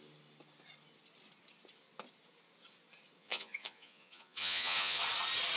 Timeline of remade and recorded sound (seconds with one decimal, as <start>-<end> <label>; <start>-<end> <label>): 0.0-3.2 recorded; 3.2-5.0 remade; 5.0-5.6 recorded